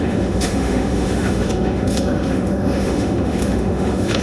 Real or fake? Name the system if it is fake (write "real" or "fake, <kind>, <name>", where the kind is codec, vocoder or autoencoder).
fake, autoencoder, DAC-VAE